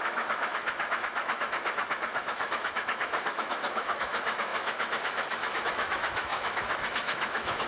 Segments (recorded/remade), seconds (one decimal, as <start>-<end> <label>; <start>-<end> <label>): 0.0-7.7 remade